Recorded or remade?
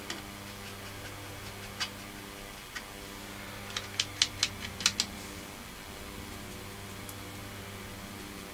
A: recorded